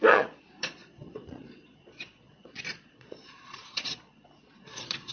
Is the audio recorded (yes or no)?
no